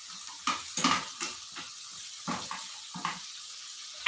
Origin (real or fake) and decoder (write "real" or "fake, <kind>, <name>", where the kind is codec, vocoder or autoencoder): real